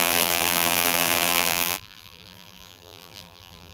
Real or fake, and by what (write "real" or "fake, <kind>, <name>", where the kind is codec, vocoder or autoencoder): fake, vocoder, BigVGAN v2